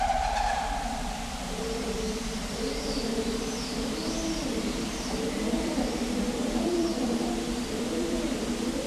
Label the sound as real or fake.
fake